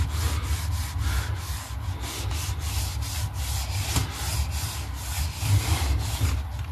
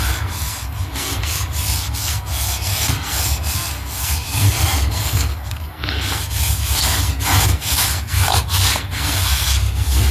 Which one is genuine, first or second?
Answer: first